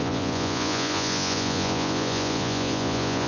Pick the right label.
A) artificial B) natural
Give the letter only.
A